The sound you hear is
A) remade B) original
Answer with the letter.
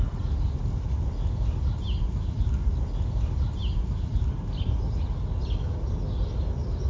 B